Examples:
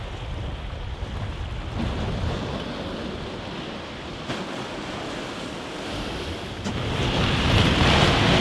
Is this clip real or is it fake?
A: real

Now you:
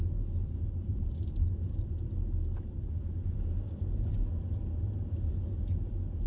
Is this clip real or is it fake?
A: real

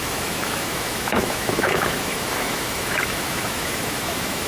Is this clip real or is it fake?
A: fake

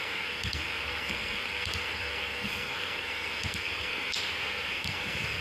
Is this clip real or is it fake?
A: fake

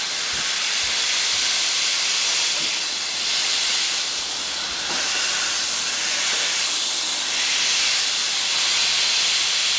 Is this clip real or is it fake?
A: fake